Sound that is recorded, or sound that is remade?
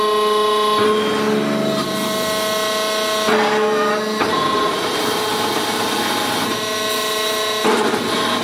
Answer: recorded